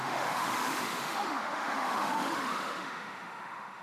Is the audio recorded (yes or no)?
no